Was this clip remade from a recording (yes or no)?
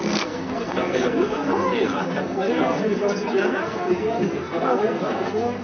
yes